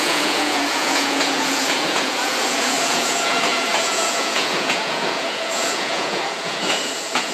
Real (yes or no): no